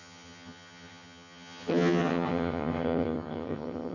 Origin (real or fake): fake